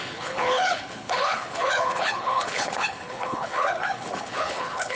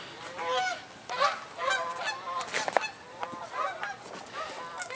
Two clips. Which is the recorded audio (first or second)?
second